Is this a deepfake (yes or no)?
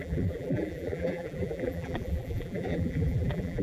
yes